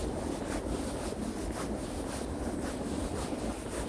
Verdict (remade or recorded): recorded